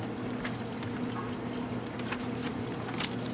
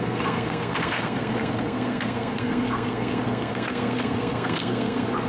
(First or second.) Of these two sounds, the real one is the first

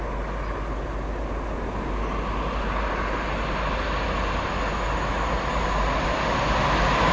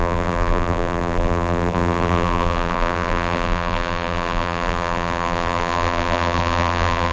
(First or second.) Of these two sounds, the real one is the first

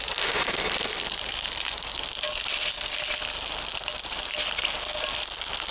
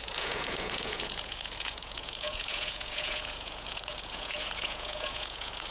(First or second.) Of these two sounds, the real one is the first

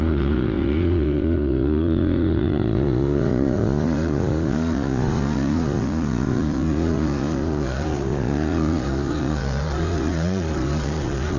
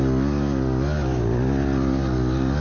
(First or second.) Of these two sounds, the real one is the second